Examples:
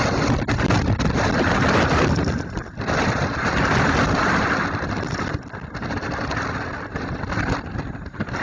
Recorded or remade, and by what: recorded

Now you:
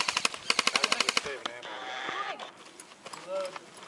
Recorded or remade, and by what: recorded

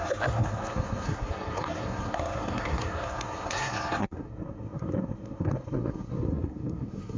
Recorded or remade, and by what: remade, codec, SNAC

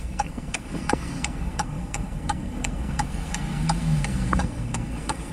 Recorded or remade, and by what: remade, codec, SNAC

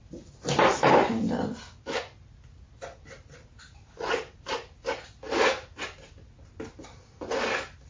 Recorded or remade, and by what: recorded